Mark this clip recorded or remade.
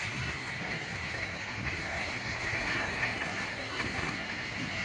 remade